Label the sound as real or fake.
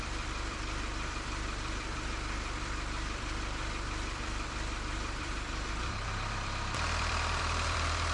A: fake